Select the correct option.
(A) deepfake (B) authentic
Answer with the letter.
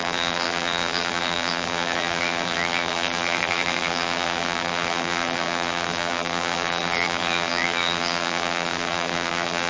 A